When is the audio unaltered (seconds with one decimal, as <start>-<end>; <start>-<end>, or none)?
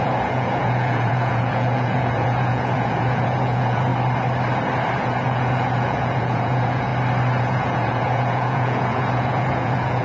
3.9-5.0; 6.9-7.4